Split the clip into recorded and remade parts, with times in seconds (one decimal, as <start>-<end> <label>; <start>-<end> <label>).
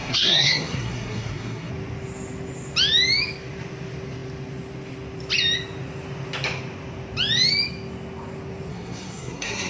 0.0-1.7 remade; 1.7-8.7 recorded; 8.7-9.7 remade